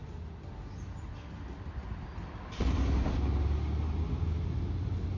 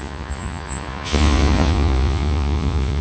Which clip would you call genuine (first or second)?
first